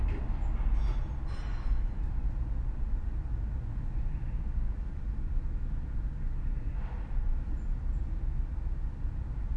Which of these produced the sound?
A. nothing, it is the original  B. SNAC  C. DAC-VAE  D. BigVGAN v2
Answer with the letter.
A